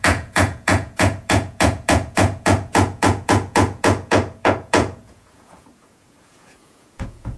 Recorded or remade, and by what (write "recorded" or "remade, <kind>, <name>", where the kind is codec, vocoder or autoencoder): remade, vocoder, Vocos